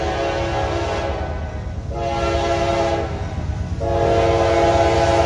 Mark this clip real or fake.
real